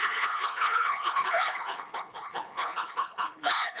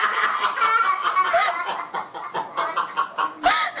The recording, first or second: second